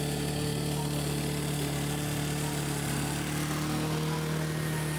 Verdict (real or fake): real